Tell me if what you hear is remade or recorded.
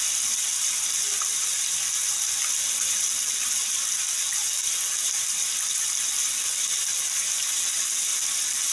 recorded